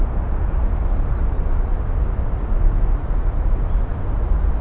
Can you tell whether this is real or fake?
real